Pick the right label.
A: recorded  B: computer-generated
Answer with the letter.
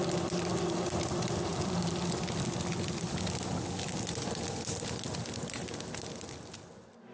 A